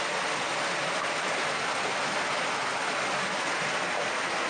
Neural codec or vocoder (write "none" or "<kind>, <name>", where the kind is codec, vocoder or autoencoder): none